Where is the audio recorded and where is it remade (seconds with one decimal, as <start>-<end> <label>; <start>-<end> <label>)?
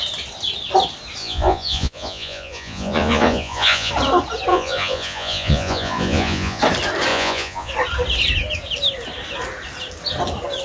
0.0-1.2 recorded; 1.2-3.9 remade; 3.9-4.5 recorded; 4.5-6.6 remade; 6.6-7.1 recorded; 7.1-7.7 remade; 7.7-10.6 recorded